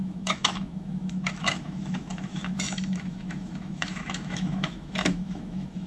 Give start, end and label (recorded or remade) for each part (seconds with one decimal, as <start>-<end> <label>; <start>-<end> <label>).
0.0-5.9 remade